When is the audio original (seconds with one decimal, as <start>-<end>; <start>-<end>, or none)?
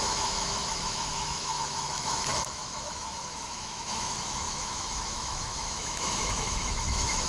none